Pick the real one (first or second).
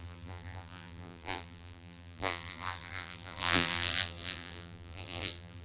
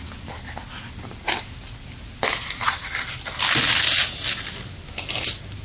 second